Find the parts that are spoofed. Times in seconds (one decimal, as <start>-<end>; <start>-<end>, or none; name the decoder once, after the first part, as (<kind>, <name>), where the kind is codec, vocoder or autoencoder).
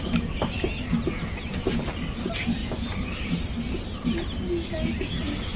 none